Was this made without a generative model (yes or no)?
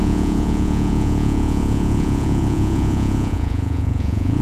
no